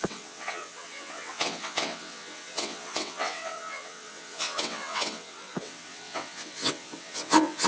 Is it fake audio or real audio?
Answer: fake